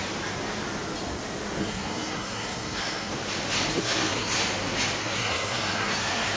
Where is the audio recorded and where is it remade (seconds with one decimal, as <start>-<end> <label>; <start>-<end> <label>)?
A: 0.0-1.6 recorded; 1.6-3.1 remade; 3.1-3.7 recorded; 3.7-4.4 remade; 4.4-5.0 recorded; 5.0-6.4 remade